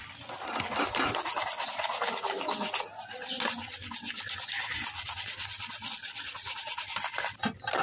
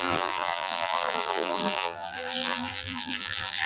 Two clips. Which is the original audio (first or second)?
first